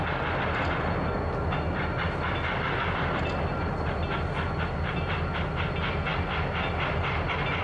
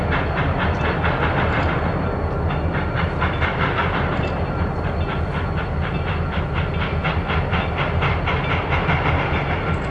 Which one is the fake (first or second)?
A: second